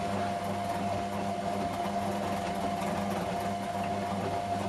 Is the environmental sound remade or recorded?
recorded